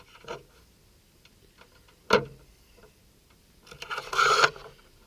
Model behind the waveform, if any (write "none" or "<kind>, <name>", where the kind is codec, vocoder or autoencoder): none